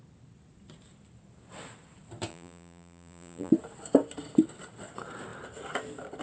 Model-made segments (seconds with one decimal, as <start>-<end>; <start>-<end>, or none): 2.3-3.5